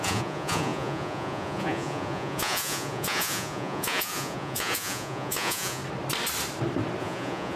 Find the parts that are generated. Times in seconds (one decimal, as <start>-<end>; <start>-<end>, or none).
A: 0.0-5.8; 7.0-7.6